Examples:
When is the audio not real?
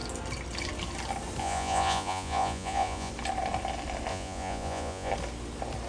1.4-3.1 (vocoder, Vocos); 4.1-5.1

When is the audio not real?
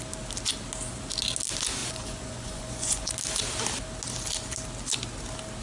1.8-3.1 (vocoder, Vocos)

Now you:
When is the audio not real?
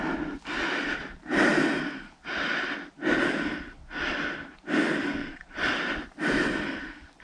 5.2-5.7 (vocoder, Vocos)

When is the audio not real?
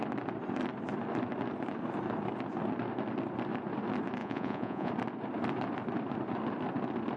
4.2-4.9 (vocoder, Vocos)